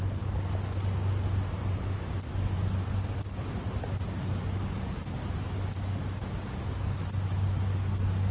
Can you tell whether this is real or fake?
real